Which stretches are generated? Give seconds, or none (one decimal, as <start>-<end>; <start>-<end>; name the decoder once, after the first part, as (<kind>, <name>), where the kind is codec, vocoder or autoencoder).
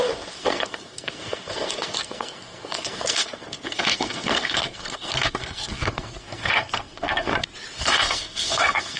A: 0.0-7.3 (codec, SNAC); 7.8-9.0